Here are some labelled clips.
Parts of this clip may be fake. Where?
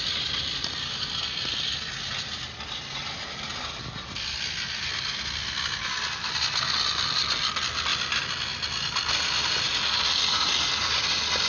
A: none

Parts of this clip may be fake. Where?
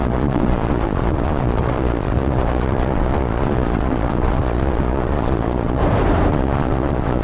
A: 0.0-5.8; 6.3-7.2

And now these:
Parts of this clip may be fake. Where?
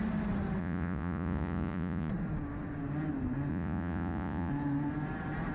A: 0.6-2.1; 3.5-4.5